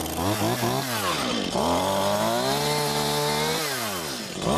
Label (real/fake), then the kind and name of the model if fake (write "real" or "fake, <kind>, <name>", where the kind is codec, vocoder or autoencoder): real